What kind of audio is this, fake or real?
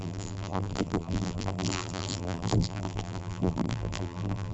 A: fake